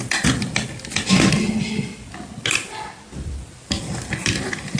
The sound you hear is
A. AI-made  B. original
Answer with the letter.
B